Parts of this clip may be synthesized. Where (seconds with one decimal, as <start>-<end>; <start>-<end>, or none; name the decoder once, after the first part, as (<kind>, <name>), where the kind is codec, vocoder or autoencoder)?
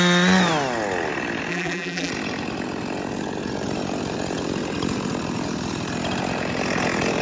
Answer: 1.5-2.1 (vocoder, BigVGAN v2)